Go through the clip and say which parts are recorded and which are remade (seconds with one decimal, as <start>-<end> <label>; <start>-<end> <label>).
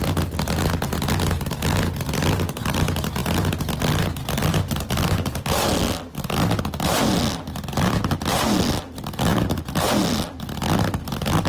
0.0-11.5 recorded